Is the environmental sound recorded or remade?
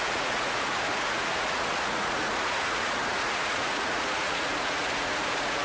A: remade